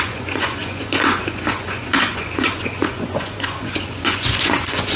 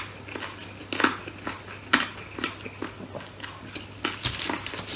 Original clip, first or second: second